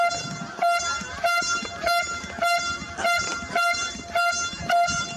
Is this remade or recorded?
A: recorded